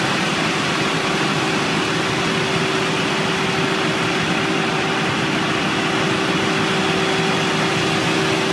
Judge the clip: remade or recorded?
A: recorded